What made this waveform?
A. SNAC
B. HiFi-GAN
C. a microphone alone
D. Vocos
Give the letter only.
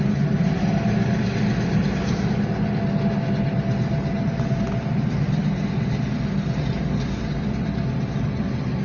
C